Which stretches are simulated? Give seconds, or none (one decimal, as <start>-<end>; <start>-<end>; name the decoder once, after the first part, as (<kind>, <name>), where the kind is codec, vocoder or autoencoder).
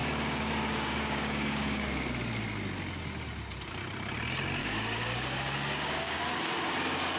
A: 0.0-2.1 (codec, DAC); 4.6-6.2